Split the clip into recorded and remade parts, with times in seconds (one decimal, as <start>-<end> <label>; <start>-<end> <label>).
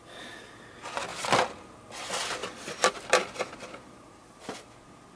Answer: 0.0-1.1 recorded; 1.1-1.7 remade; 1.7-2.4 recorded; 2.4-4.7 remade; 4.7-5.2 recorded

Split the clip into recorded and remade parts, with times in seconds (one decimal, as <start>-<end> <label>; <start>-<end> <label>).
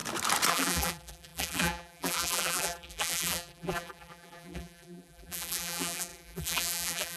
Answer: 0.0-0.5 recorded; 0.5-7.2 remade